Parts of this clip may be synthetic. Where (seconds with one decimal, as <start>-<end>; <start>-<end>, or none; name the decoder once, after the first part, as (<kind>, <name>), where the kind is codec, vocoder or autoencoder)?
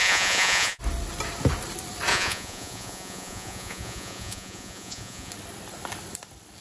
0.0-0.8 (vocoder, Vocos); 2.1-5.3